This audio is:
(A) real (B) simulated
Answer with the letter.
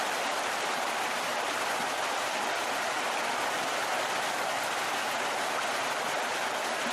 A